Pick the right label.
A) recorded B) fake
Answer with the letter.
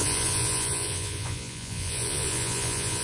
B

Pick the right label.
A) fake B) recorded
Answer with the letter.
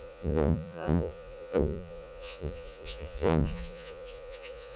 A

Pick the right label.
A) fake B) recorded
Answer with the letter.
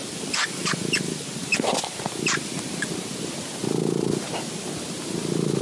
B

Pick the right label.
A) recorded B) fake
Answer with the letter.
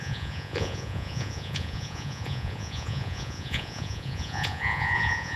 B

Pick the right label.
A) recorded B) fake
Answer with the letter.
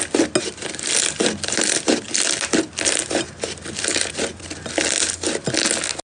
A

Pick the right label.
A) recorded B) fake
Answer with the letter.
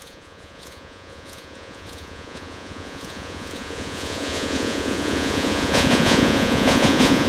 B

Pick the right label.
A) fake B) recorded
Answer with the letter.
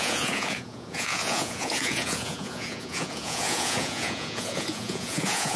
A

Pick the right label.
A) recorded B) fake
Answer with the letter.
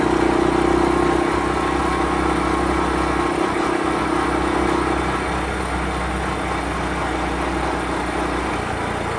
A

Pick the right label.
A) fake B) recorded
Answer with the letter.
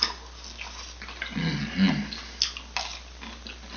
B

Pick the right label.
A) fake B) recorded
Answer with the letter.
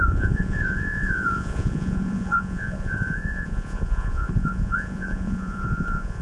A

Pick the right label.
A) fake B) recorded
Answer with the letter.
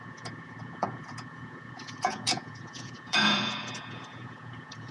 A